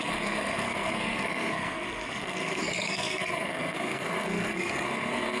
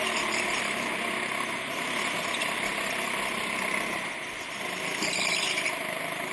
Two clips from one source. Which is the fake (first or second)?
first